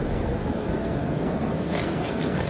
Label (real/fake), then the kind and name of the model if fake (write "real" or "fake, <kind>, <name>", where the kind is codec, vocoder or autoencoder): fake, codec, SNAC